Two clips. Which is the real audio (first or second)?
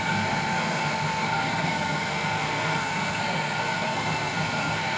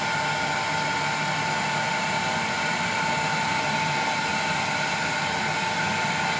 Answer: second